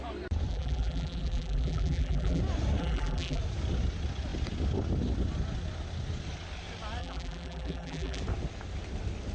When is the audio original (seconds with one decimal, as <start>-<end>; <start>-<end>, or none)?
0.0-0.5; 2.4-2.8; 3.4-7.0; 8.2-9.3